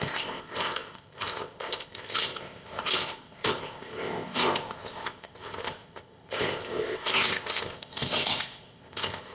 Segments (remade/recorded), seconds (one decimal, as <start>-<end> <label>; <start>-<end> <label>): 0.0-9.3 remade